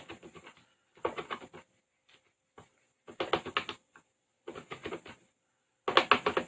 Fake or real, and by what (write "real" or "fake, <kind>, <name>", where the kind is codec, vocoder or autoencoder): real